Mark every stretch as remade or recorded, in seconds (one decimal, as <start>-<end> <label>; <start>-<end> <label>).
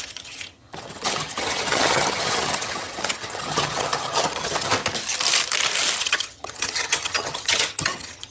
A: 0.0-4.7 remade; 4.7-6.0 recorded; 6.0-8.3 remade